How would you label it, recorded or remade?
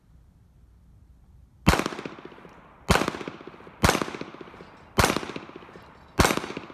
recorded